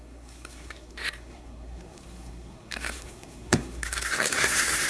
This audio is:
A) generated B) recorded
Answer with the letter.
A